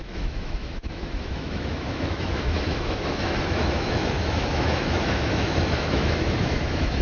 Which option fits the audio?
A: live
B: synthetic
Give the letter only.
B